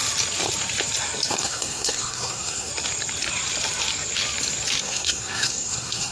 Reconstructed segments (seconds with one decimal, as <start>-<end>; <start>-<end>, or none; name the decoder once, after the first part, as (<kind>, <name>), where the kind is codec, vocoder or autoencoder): 1.3-2.7 (codec, SNAC); 4.8-6.1